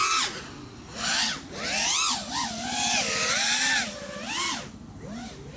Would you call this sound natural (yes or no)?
yes